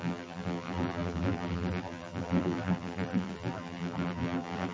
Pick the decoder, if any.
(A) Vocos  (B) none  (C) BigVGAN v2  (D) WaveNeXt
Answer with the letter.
C